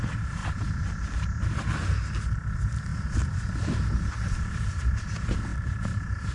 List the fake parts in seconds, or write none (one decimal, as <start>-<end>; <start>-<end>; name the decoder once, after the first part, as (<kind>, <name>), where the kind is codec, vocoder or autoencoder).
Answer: 2.9-3.7 (vocoder, BigVGAN v2); 5.5-6.3